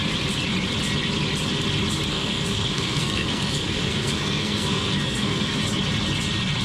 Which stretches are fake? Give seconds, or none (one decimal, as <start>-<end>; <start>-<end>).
2.1-5.6